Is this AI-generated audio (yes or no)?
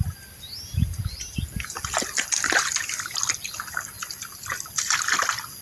no